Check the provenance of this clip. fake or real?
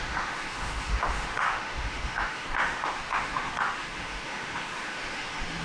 fake